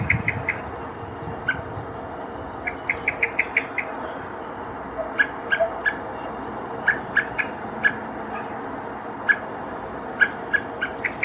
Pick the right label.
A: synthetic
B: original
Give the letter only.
B